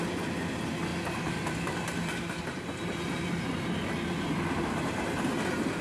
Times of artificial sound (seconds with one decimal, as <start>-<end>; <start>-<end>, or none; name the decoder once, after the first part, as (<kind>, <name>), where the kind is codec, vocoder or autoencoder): none